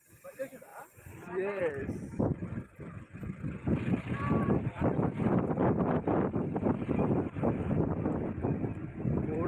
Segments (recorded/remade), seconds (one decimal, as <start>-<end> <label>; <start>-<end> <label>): 0.0-9.5 remade